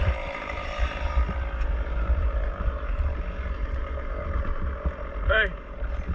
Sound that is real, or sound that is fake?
fake